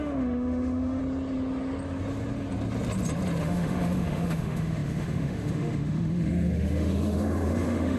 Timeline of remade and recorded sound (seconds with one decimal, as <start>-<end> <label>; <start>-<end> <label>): 0.0-1.0 remade; 1.0-3.4 recorded; 3.4-8.0 remade